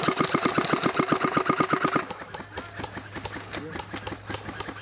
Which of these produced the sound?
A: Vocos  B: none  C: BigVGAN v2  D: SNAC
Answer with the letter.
B